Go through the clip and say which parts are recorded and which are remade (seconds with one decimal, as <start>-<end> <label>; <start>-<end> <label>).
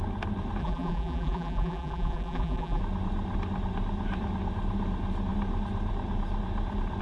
0.0-0.6 recorded; 0.6-2.8 remade; 2.8-7.0 recorded